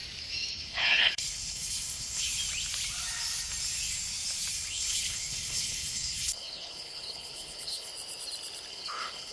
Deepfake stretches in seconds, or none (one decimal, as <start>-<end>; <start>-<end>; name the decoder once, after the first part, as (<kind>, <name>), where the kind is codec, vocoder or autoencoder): 0.5-2.3 (codec, HILCodec); 4.5-7.9; 8.7-9.3